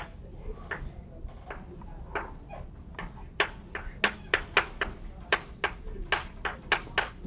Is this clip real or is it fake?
real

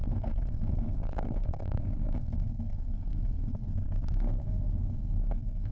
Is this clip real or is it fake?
fake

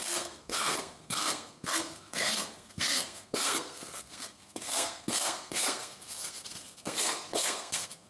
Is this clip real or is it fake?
fake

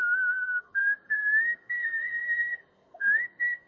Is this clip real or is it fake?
fake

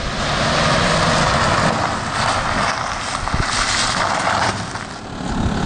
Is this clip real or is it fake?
real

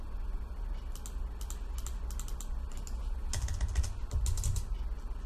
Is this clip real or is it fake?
real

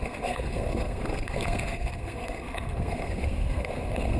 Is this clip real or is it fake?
fake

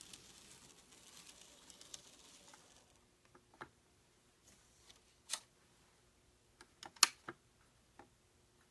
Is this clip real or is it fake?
real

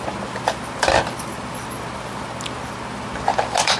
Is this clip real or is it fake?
real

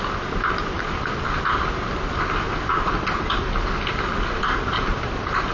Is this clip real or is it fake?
real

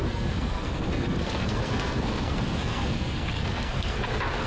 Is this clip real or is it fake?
fake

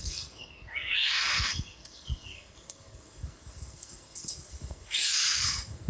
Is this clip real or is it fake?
fake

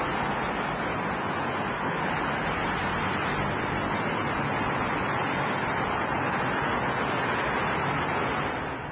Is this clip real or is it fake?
real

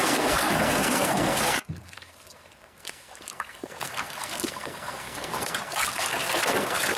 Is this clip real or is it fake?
fake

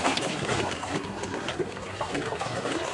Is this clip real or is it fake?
fake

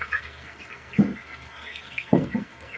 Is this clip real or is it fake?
fake